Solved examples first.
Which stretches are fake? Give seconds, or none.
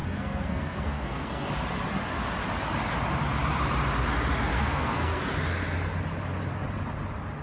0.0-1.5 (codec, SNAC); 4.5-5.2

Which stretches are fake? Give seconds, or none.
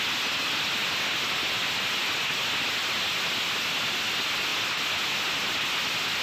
none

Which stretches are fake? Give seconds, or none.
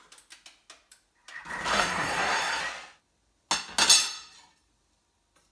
1.7-2.6 (codec, SNAC)